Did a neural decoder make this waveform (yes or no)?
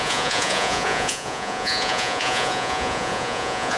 yes